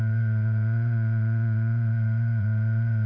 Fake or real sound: fake